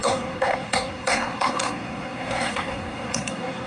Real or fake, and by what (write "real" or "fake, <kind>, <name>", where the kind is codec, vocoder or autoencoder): fake, codec, SNAC